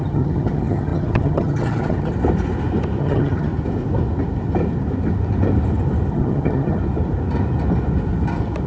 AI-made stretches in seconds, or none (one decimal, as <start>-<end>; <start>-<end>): 0.0-2.1; 3.0-3.5; 6.1-6.8